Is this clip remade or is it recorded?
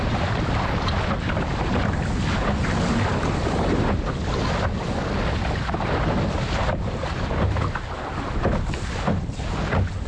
recorded